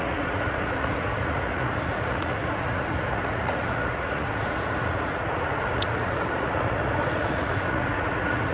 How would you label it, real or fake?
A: fake